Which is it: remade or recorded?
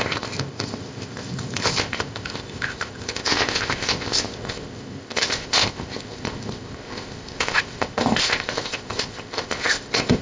remade